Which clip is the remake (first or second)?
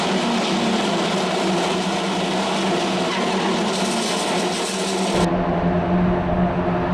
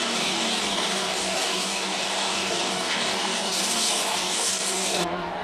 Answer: second